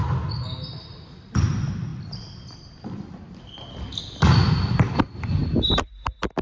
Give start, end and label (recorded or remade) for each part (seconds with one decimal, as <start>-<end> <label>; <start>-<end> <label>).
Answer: 0.0-6.4 recorded